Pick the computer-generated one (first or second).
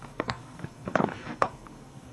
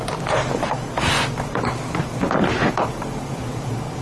first